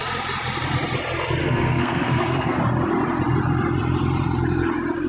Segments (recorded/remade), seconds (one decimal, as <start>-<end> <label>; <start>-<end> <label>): 0.0-1.4 recorded; 1.4-2.6 remade; 2.6-5.1 recorded